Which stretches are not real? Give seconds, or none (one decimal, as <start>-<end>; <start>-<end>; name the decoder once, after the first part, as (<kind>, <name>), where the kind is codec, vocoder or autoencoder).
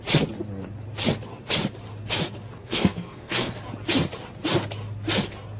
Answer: 2.6-3.5 (codec, SNAC)